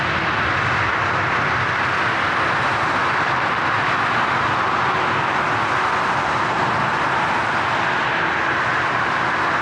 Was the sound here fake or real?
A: real